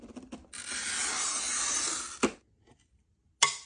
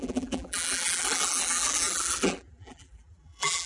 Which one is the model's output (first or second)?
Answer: second